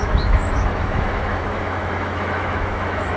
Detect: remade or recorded remade